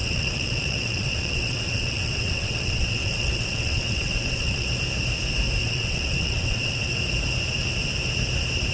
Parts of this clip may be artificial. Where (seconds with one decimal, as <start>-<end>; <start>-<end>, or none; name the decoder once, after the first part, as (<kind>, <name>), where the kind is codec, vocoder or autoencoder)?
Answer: 0.0-4.7 (vocoder, WaveNeXt); 5.6-7.0